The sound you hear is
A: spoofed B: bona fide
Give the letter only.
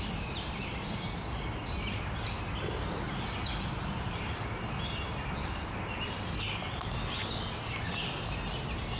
B